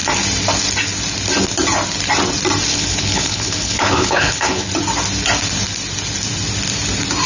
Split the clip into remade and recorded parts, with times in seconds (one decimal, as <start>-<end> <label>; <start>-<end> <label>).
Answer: 0.0-2.7 recorded; 2.7-4.7 remade; 4.7-7.3 recorded